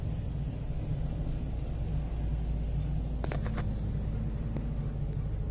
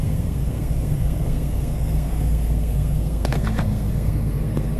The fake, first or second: second